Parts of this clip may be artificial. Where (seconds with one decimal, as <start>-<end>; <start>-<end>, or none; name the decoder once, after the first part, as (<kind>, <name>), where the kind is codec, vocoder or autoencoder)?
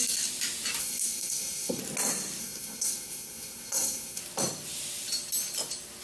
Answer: 0.8-1.8 (codec, SNAC); 2.4-4.2